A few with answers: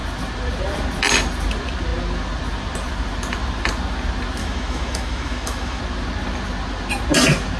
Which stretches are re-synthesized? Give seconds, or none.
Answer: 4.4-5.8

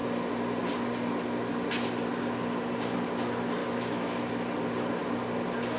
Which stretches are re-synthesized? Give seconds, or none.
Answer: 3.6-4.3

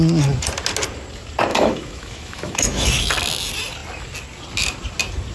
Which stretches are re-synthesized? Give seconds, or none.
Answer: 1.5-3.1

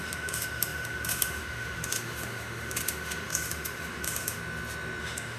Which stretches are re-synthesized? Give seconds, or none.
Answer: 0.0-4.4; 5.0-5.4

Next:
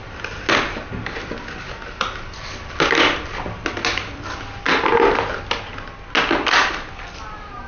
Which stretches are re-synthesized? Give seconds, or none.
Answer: none

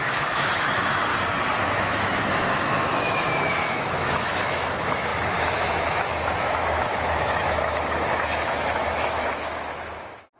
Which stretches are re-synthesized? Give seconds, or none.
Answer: 0.0-1.1; 1.6-10.4

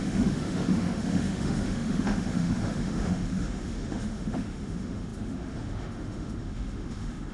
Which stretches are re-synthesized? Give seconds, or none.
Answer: 0.0-7.3

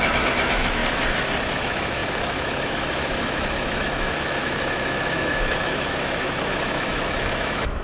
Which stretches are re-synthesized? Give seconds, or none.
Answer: 0.0-0.8; 1.5-7.8